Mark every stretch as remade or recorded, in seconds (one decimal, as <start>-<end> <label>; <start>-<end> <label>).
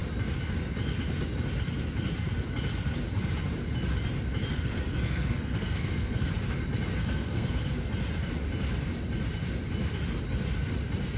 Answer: 0.0-4.5 recorded; 4.5-6.3 remade; 6.3-6.9 recorded; 6.9-7.9 remade; 7.9-11.2 recorded